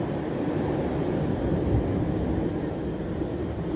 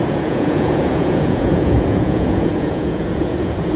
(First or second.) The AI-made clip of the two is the second